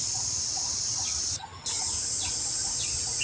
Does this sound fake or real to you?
real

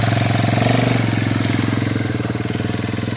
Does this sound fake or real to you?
real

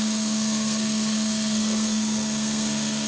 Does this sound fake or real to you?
fake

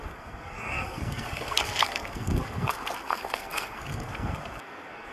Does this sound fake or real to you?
fake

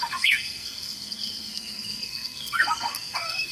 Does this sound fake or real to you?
fake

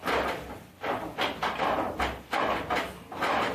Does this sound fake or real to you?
real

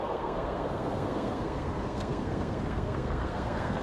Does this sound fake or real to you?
fake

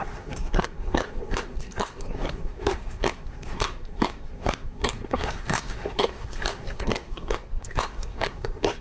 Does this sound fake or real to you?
fake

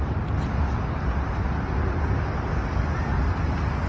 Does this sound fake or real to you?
real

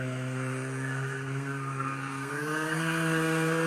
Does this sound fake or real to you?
fake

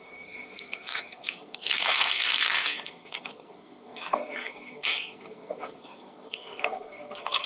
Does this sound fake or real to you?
fake